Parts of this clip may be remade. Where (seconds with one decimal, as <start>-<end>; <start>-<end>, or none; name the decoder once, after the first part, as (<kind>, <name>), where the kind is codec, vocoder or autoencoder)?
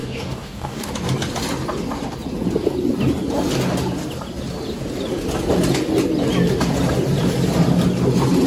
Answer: 0.0-0.9 (codec, DAC)